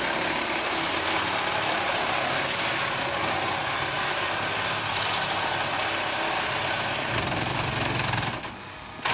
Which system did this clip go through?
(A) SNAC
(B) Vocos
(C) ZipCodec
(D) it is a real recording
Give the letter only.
D